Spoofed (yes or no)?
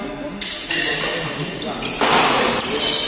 no